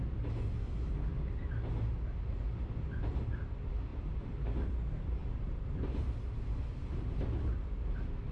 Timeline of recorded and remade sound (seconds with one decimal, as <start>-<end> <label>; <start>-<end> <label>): 0.0-8.3 recorded